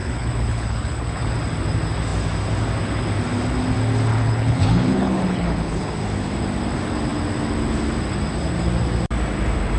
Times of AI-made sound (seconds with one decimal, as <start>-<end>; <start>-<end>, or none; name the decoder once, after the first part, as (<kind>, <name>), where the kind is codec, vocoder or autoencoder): 0.0-1.3 (codec, HILCodec); 4.1-5.9